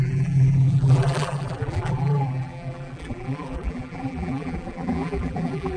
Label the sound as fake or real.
fake